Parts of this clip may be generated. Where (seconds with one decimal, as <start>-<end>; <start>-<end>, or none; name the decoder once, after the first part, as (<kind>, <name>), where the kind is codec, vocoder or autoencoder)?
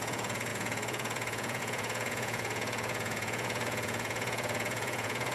0.0-5.3 (vocoder, Vocos)